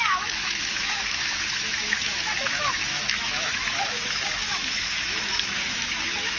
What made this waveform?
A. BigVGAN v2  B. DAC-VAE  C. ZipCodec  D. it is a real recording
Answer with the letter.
B